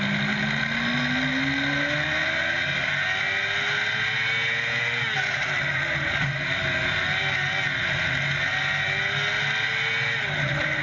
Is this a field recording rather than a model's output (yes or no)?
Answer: yes